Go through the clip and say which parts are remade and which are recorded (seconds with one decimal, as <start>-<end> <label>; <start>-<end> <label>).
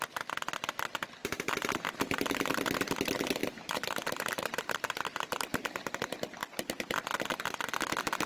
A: 0.0-1.2 recorded; 1.2-2.0 remade; 2.0-3.4 recorded; 3.4-5.9 remade; 5.9-8.3 recorded